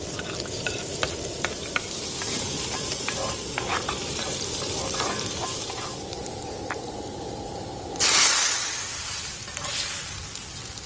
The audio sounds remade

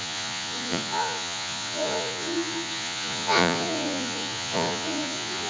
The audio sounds remade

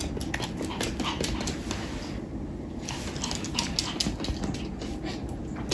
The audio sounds recorded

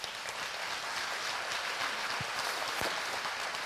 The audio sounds recorded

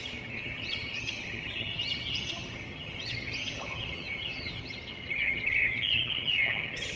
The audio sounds remade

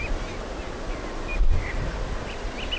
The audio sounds recorded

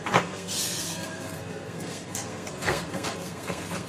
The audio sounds remade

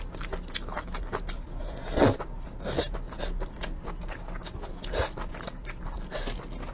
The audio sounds recorded